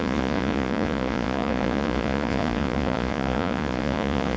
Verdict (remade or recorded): remade